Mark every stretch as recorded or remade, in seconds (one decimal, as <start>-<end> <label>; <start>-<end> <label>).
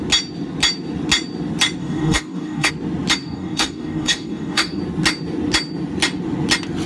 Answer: 0.0-1.8 recorded; 1.8-2.7 remade; 2.7-3.2 recorded; 3.2-4.8 remade; 4.8-6.9 recorded